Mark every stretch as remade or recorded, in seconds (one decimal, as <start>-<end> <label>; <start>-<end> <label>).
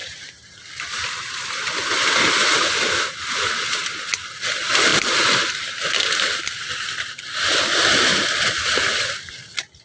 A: 0.0-0.5 remade; 0.5-4.9 recorded; 4.9-6.4 remade; 6.4-9.8 recorded